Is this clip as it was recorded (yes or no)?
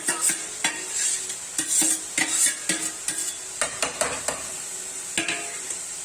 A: yes